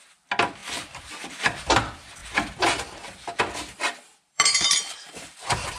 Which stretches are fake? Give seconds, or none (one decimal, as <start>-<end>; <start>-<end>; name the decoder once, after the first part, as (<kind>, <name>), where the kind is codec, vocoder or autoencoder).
4.1-5.1 (vocoder, BigVGAN v2)